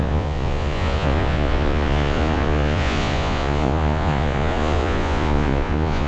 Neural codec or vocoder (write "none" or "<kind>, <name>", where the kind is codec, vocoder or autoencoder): vocoder, Vocos